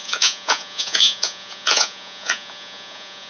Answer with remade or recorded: remade